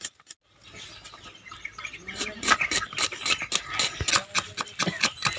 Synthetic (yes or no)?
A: no